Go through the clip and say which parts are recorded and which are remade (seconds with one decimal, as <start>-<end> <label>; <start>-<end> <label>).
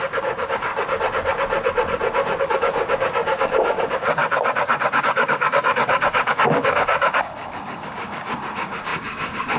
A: 0.0-0.7 remade; 0.7-2.4 recorded; 2.4-4.2 remade; 4.2-5.0 recorded; 5.0-9.6 remade